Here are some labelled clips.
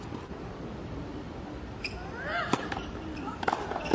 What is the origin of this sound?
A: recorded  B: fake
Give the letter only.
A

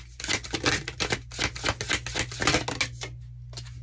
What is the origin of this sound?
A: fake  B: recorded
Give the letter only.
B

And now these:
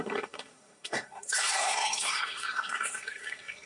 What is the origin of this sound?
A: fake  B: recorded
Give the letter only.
A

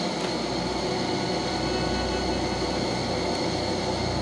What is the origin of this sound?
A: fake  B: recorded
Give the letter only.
B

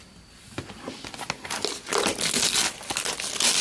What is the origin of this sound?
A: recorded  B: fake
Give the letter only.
A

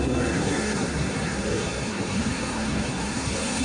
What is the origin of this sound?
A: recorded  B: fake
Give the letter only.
B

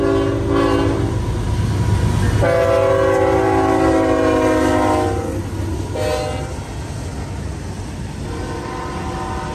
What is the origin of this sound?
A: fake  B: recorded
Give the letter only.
B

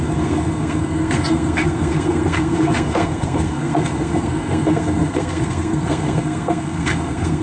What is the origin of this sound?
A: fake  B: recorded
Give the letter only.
A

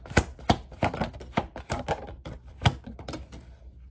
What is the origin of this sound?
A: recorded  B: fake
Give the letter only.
A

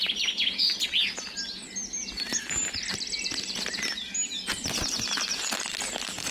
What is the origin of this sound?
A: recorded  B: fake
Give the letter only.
A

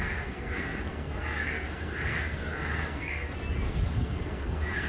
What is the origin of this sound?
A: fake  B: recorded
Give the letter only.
A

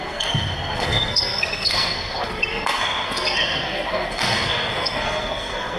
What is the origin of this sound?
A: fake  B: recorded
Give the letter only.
A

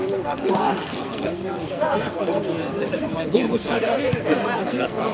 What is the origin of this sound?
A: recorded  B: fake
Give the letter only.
B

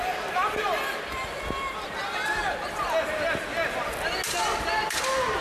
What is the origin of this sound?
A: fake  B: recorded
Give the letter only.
B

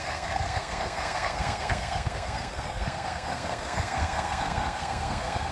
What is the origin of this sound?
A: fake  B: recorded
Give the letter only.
A